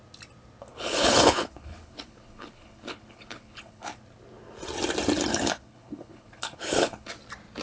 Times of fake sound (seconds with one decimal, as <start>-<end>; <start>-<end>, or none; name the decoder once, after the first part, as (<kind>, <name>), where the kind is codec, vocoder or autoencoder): 0.7-3.9 (codec, HILCodec); 5.3-7.1